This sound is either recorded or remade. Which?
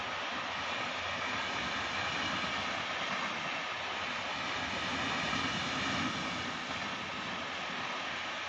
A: recorded